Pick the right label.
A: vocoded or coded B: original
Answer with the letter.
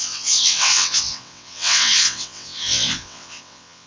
A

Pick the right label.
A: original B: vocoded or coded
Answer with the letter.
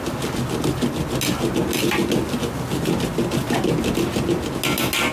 A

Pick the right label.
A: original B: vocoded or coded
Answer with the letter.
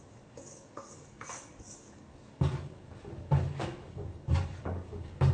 B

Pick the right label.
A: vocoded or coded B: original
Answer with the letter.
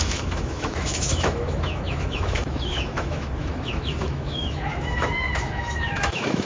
A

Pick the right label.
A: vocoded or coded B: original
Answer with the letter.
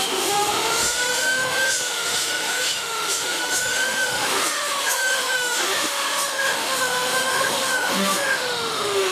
A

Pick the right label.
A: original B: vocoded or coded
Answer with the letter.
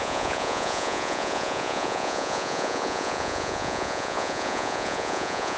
B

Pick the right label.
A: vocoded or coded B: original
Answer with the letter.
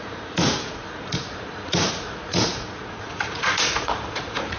A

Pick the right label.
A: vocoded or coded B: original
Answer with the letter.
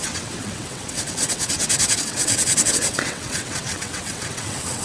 A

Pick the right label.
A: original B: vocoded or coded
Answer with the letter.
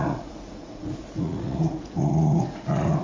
B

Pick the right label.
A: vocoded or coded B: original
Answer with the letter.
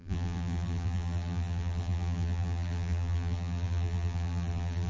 A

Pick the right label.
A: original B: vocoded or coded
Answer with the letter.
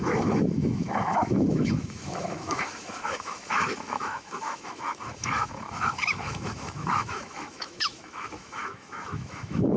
B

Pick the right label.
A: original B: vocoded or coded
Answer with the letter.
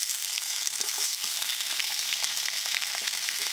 B